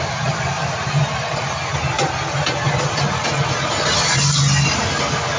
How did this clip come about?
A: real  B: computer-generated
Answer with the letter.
A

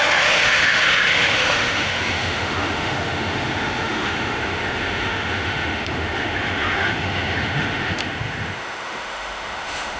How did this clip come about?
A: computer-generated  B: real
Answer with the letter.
A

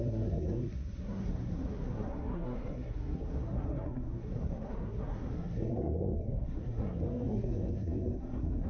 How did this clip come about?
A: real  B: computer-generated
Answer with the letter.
B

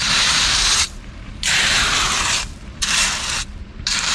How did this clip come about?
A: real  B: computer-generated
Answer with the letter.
B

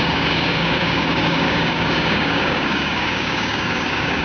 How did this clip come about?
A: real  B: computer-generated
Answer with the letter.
B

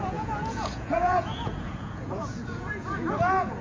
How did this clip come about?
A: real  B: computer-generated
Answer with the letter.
B